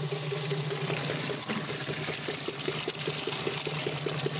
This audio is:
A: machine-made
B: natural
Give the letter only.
B